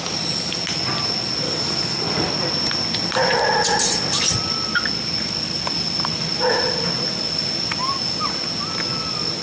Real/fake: real